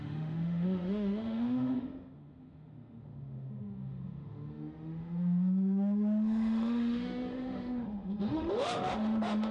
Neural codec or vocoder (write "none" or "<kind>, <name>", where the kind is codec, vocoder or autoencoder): autoencoder, DAC-VAE